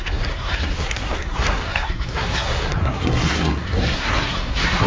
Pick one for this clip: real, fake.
fake